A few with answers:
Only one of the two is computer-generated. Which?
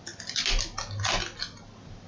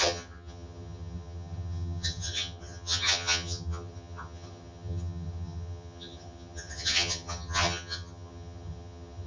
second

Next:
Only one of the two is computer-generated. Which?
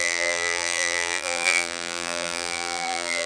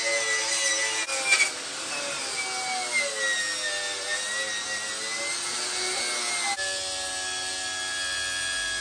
first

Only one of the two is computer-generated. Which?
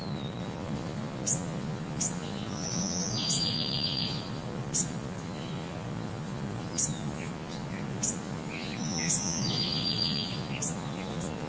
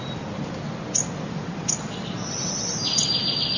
first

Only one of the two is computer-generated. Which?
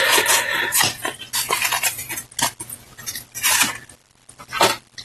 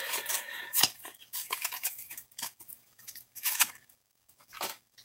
second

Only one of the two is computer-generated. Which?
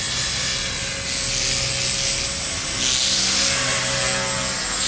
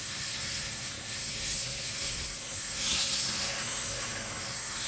second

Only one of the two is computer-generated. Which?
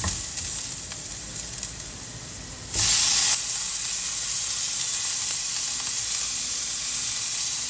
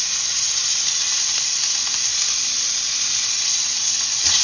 second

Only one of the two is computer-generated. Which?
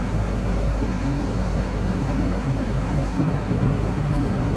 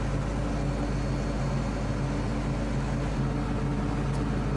first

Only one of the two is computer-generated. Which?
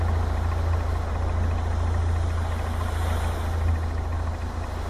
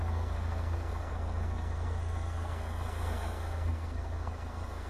second